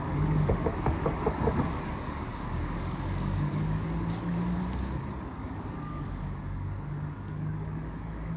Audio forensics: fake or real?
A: fake